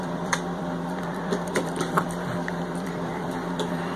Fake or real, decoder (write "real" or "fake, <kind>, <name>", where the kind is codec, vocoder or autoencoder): fake, vocoder, BigVGAN v2